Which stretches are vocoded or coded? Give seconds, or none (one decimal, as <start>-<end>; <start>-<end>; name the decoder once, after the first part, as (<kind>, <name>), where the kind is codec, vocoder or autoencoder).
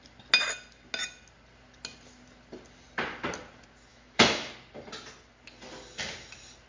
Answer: 3.9-4.5 (autoencoder, DAC-VAE)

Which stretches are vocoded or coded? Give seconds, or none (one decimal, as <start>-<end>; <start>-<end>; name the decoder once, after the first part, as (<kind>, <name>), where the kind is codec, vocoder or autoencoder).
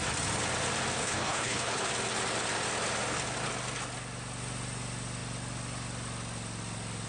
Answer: 1.0-1.9 (codec, HILCodec)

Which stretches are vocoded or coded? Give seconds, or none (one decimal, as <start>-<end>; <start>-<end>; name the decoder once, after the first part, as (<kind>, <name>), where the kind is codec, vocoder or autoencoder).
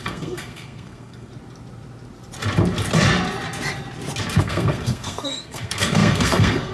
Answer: 0.0-1.3 (codec, SNAC); 4.4-6.7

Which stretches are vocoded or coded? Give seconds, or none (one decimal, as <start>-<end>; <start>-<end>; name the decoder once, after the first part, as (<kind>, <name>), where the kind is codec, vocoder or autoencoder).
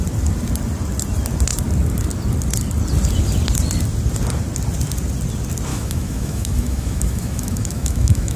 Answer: 5.7-8.4 (autoencoder, DAC-VAE)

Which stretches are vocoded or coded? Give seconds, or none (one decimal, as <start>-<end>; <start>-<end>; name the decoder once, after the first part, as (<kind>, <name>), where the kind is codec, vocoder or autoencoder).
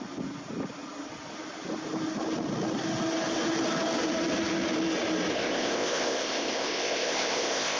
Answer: 5.3-7.8 (codec, ZipCodec)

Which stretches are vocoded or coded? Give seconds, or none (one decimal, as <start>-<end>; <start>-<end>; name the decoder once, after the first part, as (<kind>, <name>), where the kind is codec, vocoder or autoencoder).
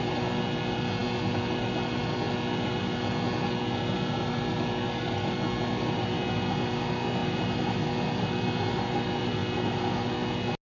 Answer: none